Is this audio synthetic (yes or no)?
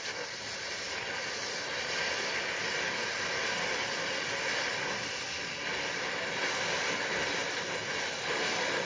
no